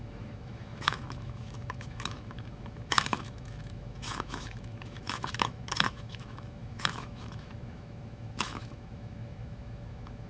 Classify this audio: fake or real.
fake